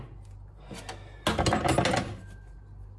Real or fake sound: real